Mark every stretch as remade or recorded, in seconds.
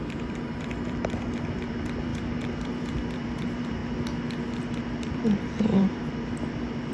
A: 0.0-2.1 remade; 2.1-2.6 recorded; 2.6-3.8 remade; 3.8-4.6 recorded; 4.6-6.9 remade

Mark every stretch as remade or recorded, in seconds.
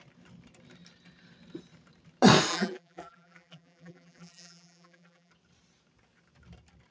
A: 0.0-2.5 recorded; 2.5-5.3 remade; 5.3-6.9 recorded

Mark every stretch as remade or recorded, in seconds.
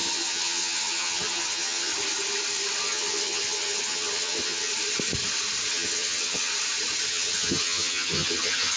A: 0.0-1.9 remade; 1.9-2.8 recorded; 2.8-4.7 remade; 4.7-5.7 recorded; 5.7-6.5 remade; 6.5-7.1 recorded; 7.1-8.8 remade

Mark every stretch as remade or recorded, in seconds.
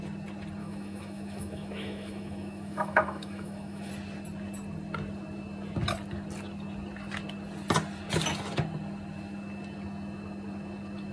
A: 0.0-0.6 recorded; 0.6-3.9 remade; 3.9-11.1 recorded